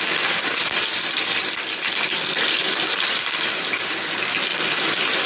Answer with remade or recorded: remade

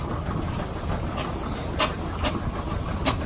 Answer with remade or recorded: recorded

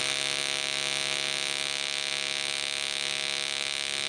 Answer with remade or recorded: recorded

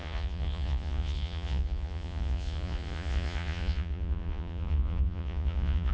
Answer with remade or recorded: remade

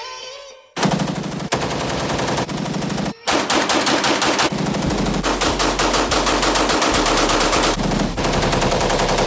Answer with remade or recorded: recorded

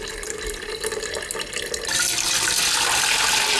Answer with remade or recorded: recorded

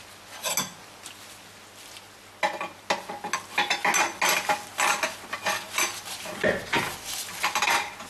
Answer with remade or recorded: recorded